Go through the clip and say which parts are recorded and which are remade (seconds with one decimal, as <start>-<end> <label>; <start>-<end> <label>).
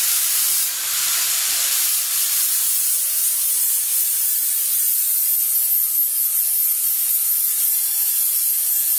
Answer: 0.0-5.3 remade; 5.3-6.3 recorded; 6.3-9.0 remade